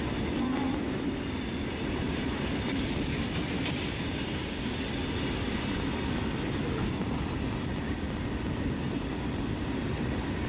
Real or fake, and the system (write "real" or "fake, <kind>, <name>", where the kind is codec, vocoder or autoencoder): real